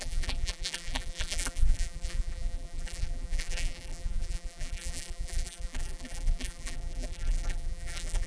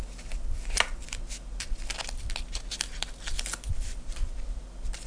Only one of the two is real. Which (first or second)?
second